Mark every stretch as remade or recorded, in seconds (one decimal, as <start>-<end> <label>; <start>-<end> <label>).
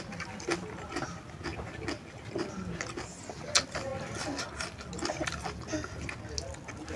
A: 0.0-7.0 recorded